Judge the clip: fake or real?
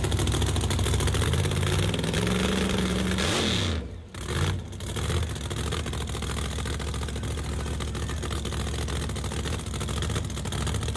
real